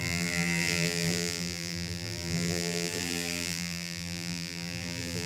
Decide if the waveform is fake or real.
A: fake